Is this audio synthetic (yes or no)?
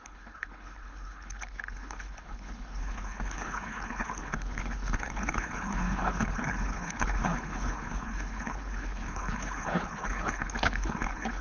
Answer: yes